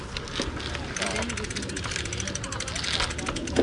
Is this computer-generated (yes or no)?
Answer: no